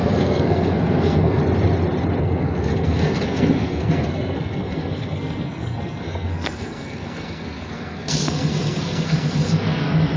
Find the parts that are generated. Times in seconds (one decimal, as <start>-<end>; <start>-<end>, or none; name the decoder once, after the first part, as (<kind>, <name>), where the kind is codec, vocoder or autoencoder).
0.0-1.4 (codec, SNAC); 2.2-10.2